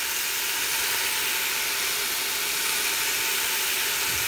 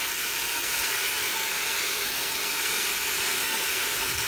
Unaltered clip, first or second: first